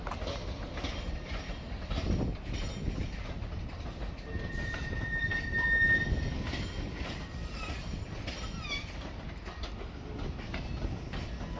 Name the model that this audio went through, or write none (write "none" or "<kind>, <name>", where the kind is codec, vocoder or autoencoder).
none